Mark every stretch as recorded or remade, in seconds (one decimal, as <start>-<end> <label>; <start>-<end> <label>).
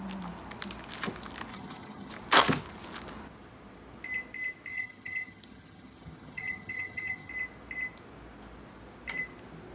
0.0-1.5 recorded; 1.5-2.1 remade; 2.1-4.7 recorded; 4.7-7.3 remade; 7.3-9.7 recorded